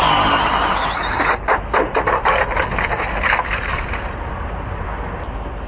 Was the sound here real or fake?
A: real